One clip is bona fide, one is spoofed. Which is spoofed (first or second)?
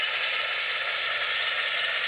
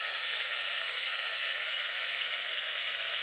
second